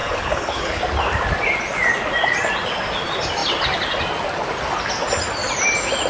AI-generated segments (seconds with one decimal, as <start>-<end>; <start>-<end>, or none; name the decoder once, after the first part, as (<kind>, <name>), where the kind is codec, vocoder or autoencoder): 0.0-0.8 (codec, HILCodec)